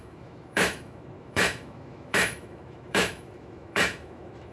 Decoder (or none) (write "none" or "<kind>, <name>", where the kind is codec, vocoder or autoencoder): autoencoder, DAC-VAE